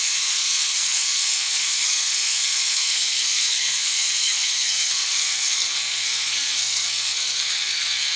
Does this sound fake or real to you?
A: fake